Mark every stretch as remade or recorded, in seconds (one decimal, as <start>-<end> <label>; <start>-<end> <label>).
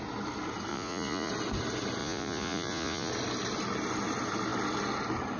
0.0-0.7 recorded; 0.7-1.3 remade; 1.3-2.0 recorded; 2.0-3.1 remade; 3.1-5.4 recorded